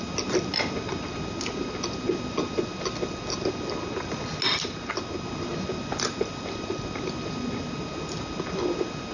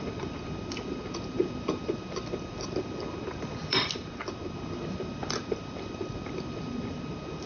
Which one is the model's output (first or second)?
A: second